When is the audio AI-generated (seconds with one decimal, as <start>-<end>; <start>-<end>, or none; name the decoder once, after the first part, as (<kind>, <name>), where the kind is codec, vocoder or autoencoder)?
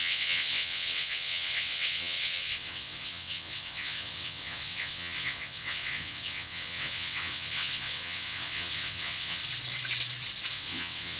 0.0-9.4 (vocoder, WaveNeXt); 10.5-11.2